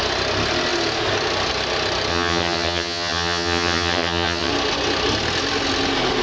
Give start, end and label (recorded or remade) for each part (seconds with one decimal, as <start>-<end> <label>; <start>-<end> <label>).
0.0-2.1 recorded; 2.1-4.5 remade; 4.5-6.2 recorded